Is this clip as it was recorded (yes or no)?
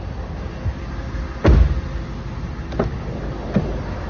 yes